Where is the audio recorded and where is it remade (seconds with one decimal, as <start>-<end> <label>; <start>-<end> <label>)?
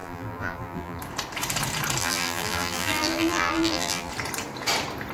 0.0-1.0 remade; 1.0-2.0 recorded; 2.0-4.1 remade; 4.1-5.1 recorded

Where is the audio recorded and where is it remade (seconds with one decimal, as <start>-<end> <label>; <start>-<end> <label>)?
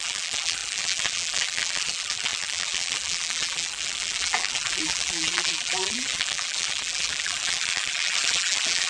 0.0-8.9 remade